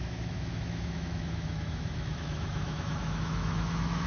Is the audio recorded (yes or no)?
no